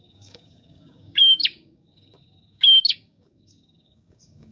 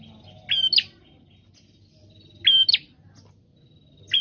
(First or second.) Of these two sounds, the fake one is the first